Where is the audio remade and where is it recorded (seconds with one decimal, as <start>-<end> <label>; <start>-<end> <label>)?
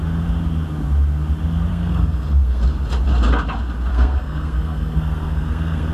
0.0-1.7 recorded; 1.7-2.6 remade; 2.6-3.9 recorded; 3.9-5.9 remade